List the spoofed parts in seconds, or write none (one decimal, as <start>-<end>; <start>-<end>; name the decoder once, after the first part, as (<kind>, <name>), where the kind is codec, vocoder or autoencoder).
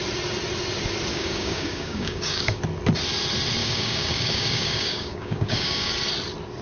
1.1-2.6 (codec, DAC); 3.6-5.9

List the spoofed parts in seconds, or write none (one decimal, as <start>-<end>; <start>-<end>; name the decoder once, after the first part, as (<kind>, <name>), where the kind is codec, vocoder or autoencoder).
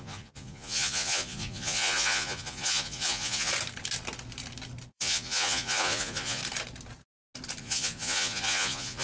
0.0-3.5 (vocoder, Vocos); 4.9-6.4; 7.6-9.0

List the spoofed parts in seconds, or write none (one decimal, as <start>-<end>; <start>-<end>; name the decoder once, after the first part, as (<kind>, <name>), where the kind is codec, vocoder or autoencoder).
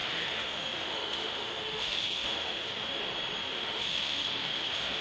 0.0-3.0 (autoencoder, DAC-VAE); 3.4-5.0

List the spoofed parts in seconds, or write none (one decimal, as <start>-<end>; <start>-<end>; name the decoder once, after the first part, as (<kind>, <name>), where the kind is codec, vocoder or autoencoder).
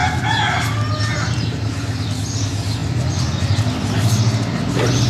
none